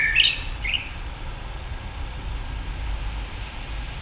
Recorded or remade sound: recorded